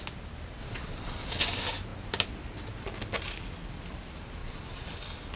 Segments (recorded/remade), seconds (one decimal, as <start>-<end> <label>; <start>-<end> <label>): 0.0-0.6 recorded; 0.6-1.4 remade; 1.4-4.4 recorded; 4.4-4.9 remade; 4.9-5.4 recorded